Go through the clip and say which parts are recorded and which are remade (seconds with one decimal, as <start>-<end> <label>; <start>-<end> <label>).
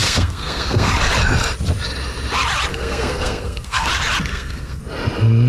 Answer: 0.0-0.9 remade; 0.9-2.7 recorded; 2.7-3.9 remade; 3.9-4.3 recorded; 4.3-4.8 remade; 4.8-5.5 recorded